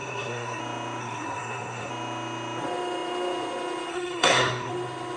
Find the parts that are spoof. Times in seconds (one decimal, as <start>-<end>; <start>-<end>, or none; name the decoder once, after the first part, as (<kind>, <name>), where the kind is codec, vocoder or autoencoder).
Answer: 0.0-0.6 (codec, SNAC); 1.0-1.9; 3.9-4.7